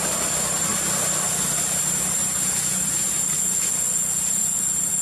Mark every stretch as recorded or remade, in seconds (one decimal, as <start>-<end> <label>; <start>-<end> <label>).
0.0-0.7 recorded; 0.7-3.1 remade; 3.1-5.0 recorded